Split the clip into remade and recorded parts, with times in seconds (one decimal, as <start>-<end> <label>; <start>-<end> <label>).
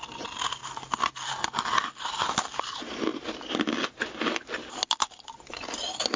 0.0-6.2 recorded